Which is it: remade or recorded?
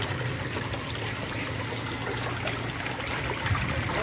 recorded